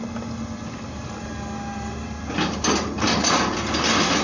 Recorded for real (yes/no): yes